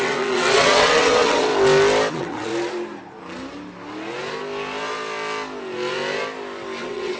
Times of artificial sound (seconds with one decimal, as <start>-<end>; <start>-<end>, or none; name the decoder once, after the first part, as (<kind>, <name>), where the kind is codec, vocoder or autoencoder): 0.0-1.5 (vocoder, WaveNeXt); 2.1-2.5; 6.8-7.2